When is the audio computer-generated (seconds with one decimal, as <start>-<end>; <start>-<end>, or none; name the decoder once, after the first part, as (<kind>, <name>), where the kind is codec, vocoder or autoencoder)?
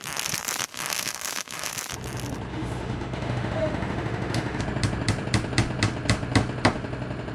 0.7-1.7 (autoencoder, DAC-VAE); 2.5-4.6